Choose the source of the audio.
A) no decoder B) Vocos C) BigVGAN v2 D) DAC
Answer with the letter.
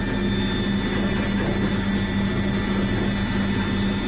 A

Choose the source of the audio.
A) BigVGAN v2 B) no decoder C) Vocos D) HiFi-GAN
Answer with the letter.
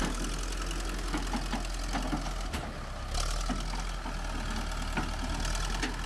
B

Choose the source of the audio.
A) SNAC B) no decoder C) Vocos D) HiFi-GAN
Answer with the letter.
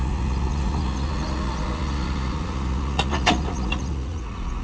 C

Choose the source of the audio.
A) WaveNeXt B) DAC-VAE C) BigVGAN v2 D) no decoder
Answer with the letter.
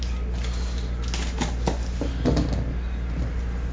D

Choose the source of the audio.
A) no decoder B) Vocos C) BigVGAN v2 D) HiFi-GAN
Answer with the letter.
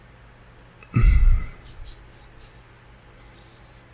A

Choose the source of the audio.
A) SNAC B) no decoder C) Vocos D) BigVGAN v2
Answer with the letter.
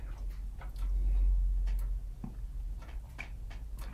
B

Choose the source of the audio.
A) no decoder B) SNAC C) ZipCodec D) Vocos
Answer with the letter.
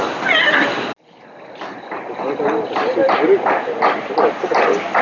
A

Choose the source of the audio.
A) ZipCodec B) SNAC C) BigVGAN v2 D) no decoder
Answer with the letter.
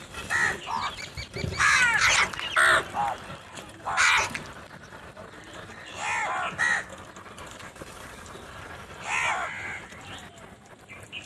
D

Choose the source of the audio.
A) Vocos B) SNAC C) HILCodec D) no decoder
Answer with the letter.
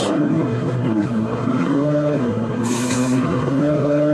B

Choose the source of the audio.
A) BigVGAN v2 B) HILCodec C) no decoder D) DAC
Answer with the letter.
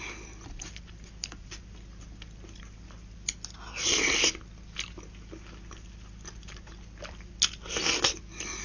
C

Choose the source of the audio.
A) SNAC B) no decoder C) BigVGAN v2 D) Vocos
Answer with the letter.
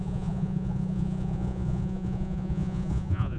D